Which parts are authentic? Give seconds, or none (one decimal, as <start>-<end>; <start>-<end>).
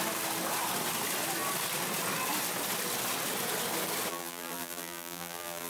0.0-4.1